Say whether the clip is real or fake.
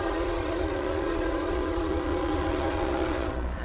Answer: fake